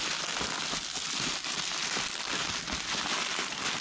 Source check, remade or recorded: recorded